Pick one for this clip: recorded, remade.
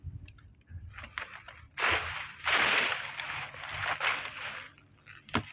recorded